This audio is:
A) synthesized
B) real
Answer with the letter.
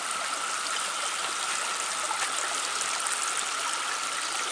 B